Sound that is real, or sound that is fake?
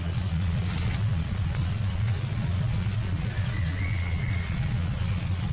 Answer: fake